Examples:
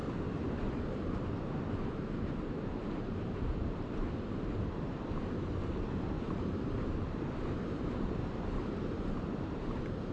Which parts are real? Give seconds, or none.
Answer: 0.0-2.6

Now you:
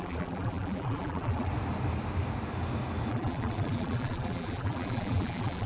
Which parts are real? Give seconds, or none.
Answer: 1.5-3.1

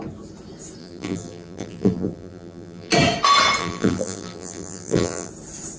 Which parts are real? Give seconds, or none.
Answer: 0.0-0.8; 2.9-3.6; 5.3-5.8

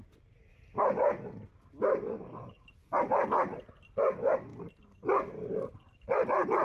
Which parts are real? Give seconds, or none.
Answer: 0.0-6.6

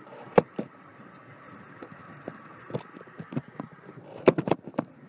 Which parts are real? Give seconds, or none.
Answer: 0.9-3.7